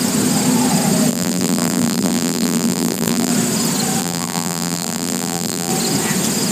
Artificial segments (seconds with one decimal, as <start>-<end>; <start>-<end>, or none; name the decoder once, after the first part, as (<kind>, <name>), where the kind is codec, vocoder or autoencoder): 1.1-3.3 (vocoder, BigVGAN v2); 4.0-5.7